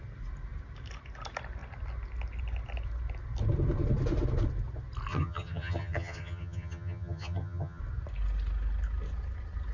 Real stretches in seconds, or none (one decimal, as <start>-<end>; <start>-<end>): 0.0-5.1; 7.8-9.7